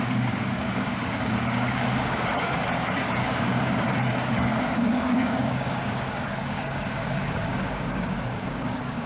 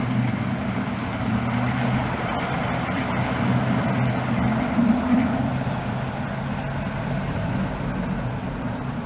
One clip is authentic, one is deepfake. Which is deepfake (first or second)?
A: first